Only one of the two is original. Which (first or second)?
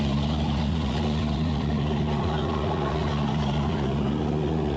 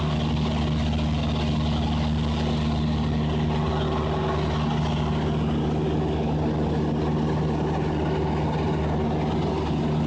second